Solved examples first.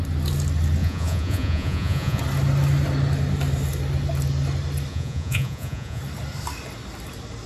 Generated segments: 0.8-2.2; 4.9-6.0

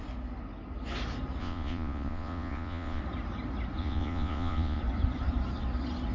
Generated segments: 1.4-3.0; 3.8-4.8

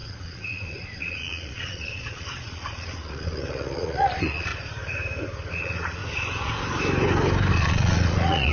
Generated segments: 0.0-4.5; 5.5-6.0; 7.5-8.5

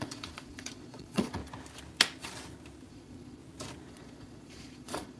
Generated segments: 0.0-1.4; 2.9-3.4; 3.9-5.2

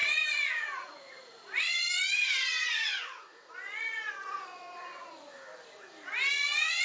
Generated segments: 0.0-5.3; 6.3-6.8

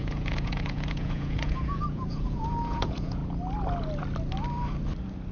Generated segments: 0.0-3.2

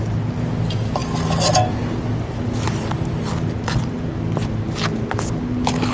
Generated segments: none